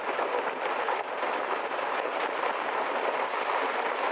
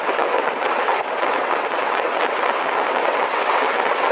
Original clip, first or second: first